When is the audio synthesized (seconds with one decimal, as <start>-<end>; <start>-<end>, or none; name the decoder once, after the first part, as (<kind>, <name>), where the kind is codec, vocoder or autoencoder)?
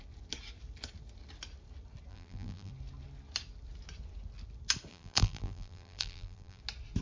2.1-2.7 (vocoder, BigVGAN v2); 4.9-6.6